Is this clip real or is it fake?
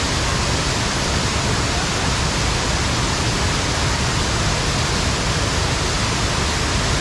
real